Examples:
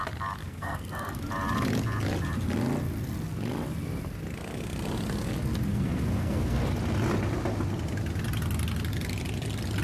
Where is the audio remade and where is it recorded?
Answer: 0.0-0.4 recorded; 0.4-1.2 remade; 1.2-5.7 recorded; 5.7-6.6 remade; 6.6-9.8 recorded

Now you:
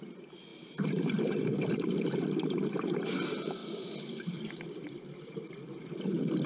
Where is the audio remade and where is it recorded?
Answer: 0.0-0.5 recorded; 0.5-1.2 remade; 1.2-3.6 recorded; 3.6-5.5 remade; 5.5-6.5 recorded

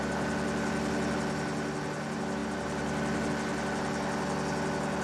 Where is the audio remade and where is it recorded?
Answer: 0.0-5.0 recorded

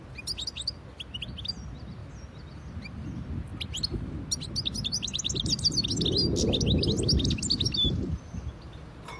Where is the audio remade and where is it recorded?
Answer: 0.0-9.2 recorded